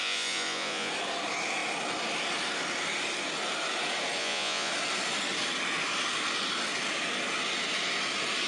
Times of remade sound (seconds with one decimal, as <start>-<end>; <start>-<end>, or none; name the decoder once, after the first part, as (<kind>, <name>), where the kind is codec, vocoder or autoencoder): 0.0-0.9 (vocoder, Vocos); 4.2-4.7